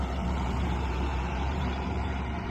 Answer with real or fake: fake